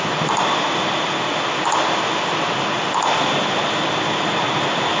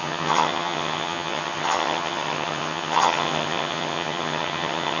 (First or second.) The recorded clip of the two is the first